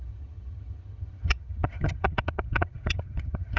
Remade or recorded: remade